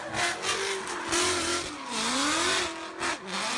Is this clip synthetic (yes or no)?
no